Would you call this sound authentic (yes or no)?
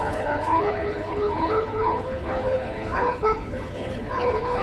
no